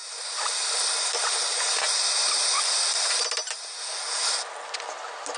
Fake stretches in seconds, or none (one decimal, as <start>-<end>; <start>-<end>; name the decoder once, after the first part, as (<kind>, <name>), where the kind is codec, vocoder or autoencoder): none